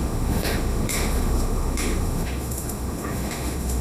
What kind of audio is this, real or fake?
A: fake